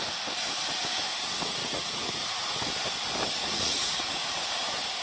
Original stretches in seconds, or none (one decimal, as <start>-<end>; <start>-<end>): 0.0-1.6; 2.6-3.4; 4.5-5.0